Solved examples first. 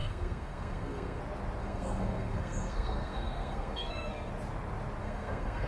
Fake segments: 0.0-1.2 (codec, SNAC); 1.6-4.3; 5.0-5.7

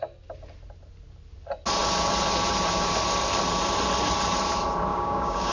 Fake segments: 4.9-5.5 (codec, DAC)

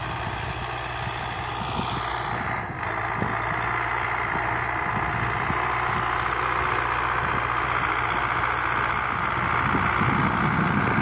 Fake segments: none

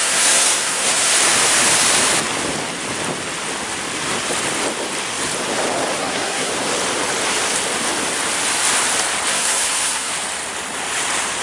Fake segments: 0.0-1.1 (codec, SNAC); 6.0-6.5; 9.3-10.1

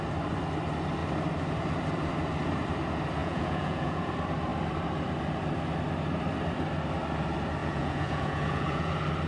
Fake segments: 3.2-4.1 (vocoder, Vocos); 7.6-8.9